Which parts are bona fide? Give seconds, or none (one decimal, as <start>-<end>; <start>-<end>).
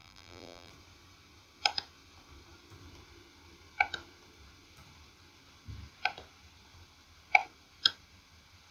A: 0.7-8.7